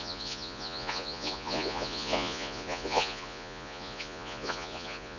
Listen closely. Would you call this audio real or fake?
fake